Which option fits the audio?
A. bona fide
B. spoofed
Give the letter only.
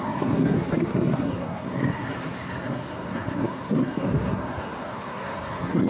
B